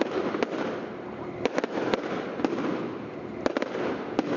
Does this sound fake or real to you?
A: real